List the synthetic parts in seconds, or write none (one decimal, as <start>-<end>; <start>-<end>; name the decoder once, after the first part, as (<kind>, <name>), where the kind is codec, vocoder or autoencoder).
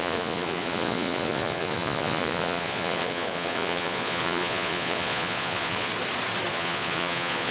0.0-5.9 (vocoder, Vocos); 6.5-7.5